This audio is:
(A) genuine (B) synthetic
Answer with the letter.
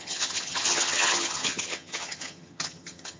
B